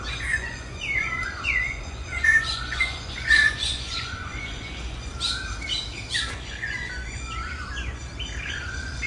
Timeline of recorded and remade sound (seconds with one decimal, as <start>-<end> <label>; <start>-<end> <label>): 0.0-5.1 remade; 5.1-6.2 recorded; 6.2-8.0 remade; 8.0-8.5 recorded; 8.5-9.1 remade